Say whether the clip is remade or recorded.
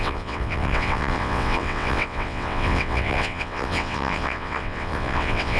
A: remade